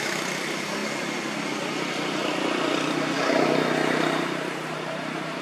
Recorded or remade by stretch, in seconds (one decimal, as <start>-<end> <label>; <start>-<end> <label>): 0.0-0.8 remade; 0.8-4.0 recorded; 4.0-5.4 remade